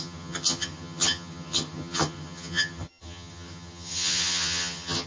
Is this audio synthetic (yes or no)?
yes